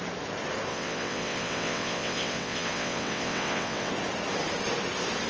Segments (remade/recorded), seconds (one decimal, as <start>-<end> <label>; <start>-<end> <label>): 0.0-0.7 recorded; 0.7-3.9 remade; 3.9-5.3 recorded